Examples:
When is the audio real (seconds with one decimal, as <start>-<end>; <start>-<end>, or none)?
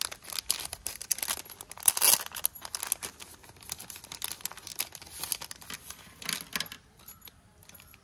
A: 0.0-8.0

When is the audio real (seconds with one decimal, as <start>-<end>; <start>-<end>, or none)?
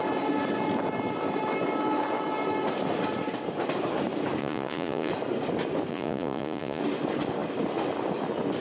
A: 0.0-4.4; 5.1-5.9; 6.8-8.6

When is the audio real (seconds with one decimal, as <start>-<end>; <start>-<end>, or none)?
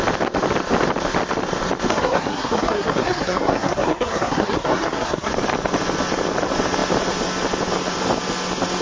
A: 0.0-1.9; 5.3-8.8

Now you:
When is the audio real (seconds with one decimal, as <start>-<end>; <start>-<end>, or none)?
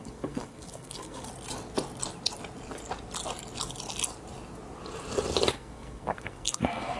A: 1.3-5.5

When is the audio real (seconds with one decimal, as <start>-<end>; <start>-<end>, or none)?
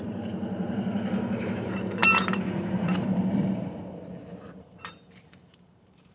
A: none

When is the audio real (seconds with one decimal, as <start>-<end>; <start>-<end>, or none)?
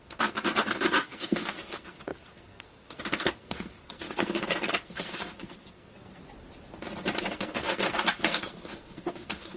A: 6.2-7.2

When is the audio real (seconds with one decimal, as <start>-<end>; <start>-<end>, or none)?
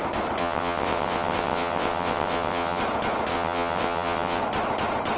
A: 0.0-0.4; 2.8-3.3; 4.4-5.2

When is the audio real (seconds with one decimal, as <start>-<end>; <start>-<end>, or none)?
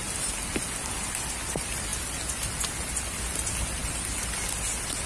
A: 0.0-5.1